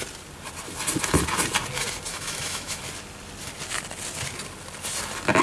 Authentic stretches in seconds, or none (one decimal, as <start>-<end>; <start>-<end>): 0.0-2.1; 2.8-5.4